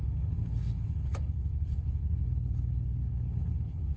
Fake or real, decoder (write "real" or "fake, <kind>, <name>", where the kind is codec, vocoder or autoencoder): fake, codec, HILCodec